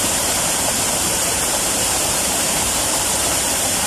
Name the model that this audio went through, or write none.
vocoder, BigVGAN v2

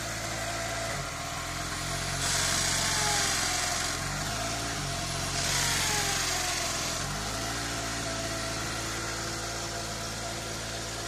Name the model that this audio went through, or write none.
none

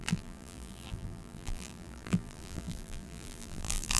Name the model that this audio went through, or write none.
vocoder, BigVGAN v2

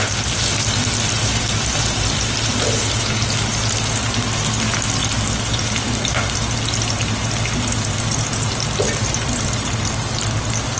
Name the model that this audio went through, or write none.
none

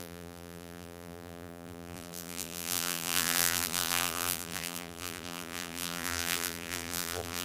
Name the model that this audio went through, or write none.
vocoder, BigVGAN v2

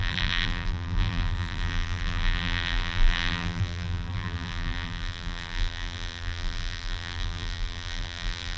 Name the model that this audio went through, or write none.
vocoder, BigVGAN v2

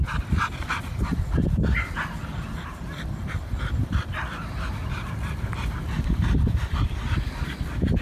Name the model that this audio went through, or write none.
vocoder, BigVGAN v2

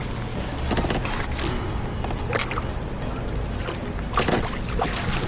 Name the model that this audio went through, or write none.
none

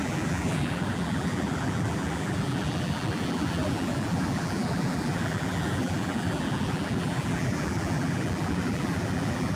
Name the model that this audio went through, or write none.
vocoder, BigVGAN v2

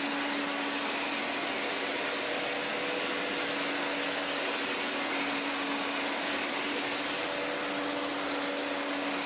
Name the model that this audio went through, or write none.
none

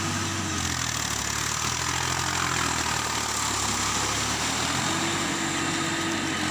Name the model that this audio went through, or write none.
none